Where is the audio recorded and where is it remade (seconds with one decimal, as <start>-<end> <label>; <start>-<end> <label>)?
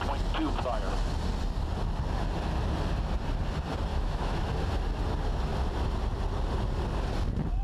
0.0-3.9 recorded; 3.9-4.5 remade; 4.5-7.6 recorded